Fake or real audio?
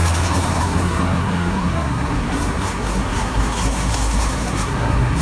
fake